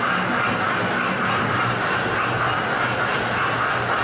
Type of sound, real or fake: real